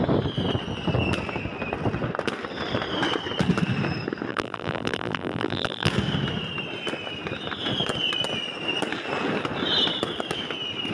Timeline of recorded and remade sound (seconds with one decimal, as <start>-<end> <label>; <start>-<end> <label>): 0.0-4.3 recorded; 4.3-5.9 remade; 5.9-10.9 recorded

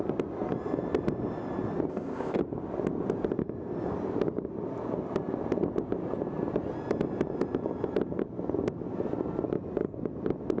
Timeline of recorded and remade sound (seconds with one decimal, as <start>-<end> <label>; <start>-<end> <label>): 0.0-1.9 recorded; 1.9-2.4 remade; 2.4-10.6 recorded

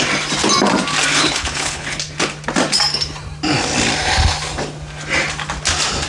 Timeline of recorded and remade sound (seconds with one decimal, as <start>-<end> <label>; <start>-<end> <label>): 0.0-1.1 recorded; 1.1-2.0 remade; 2.0-6.1 recorded

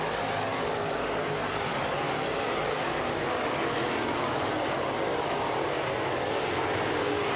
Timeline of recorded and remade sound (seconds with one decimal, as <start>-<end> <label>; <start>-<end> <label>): 0.0-0.5 recorded; 0.5-2.0 remade; 2.0-7.4 recorded

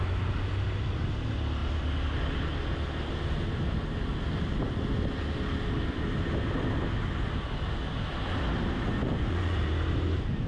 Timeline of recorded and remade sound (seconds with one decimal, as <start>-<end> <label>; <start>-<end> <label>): 0.0-9.0 recorded; 9.0-9.6 remade; 9.6-10.5 recorded

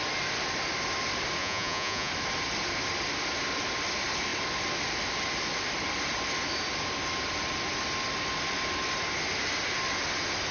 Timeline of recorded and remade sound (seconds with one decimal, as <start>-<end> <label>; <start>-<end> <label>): 0.0-1.4 recorded; 1.4-2.1 remade; 2.1-10.5 recorded

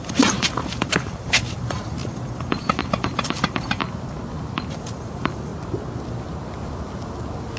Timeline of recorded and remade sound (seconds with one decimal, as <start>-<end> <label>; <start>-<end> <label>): 0.0-3.8 remade; 3.8-4.7 recorded; 4.7-5.5 remade; 5.5-7.6 recorded

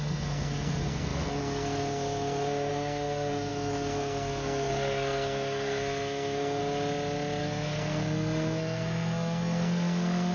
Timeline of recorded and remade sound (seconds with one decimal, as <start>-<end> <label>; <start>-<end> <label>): 0.0-6.6 remade; 6.6-7.4 recorded; 7.4-10.3 remade